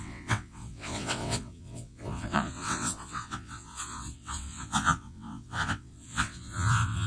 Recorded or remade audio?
remade